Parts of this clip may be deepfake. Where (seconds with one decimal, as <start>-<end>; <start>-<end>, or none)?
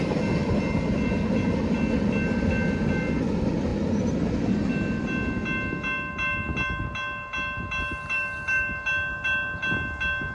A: none